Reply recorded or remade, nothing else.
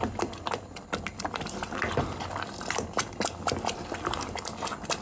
recorded